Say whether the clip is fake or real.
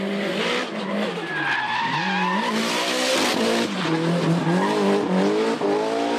real